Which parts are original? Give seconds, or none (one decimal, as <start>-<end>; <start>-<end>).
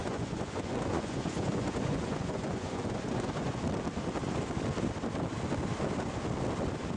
3.6-7.0